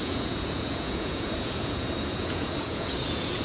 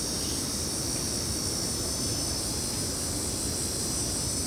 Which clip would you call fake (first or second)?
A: first